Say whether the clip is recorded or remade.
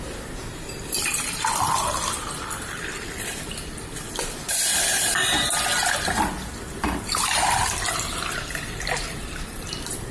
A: remade